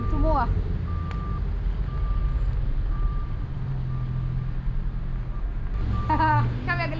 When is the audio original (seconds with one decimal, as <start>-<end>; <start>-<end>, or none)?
0.0-2.2; 3.7-7.0